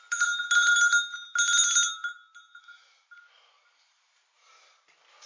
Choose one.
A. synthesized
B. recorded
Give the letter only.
B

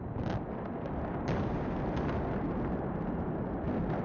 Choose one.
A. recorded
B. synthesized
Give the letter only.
A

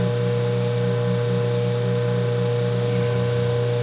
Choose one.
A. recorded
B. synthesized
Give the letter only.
A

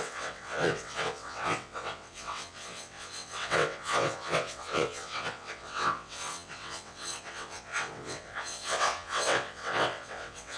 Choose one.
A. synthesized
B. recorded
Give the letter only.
A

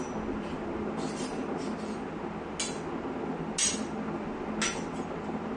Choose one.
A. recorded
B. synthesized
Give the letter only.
A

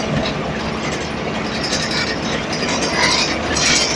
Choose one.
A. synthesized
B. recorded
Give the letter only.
B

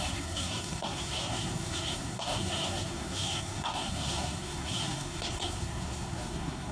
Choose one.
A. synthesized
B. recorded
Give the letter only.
A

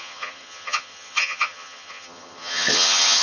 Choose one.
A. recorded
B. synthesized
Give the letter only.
B